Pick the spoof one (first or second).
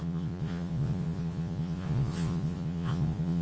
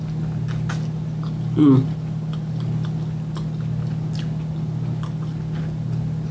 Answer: first